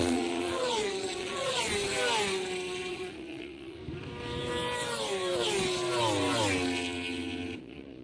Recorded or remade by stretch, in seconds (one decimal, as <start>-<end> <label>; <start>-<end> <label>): 0.0-1.7 remade; 1.7-2.9 recorded; 2.9-3.8 remade; 3.8-7.6 recorded; 7.6-8.0 remade